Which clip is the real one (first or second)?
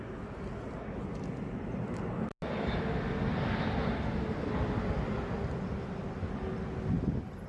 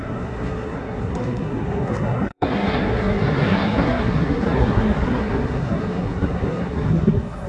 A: first